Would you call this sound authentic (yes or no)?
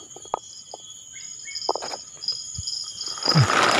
yes